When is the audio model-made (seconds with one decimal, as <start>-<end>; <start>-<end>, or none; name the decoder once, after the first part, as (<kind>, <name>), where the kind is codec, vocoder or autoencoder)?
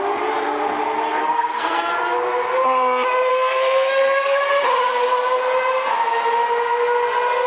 1.2-1.9 (codec, SNAC); 3.3-4.5